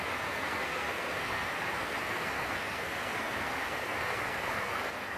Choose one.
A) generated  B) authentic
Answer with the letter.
A